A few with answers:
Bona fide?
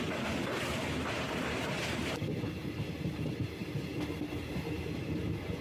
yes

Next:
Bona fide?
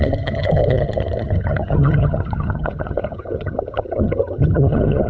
no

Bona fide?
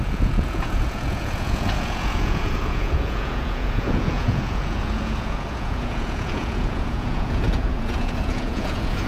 no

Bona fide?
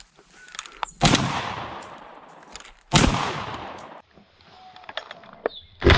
yes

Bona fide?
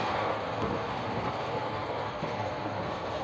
no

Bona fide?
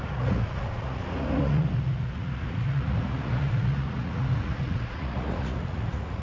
no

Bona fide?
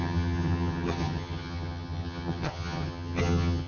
no